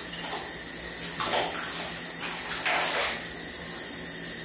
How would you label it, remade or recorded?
recorded